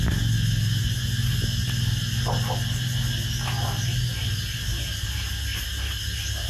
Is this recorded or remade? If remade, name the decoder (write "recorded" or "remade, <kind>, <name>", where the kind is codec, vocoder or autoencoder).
recorded